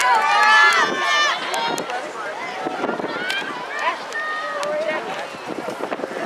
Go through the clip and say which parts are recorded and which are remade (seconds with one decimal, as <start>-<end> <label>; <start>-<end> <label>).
0.0-6.3 recorded